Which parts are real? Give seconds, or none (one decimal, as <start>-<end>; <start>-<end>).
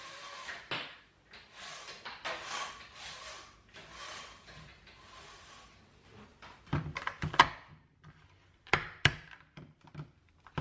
0.0-10.6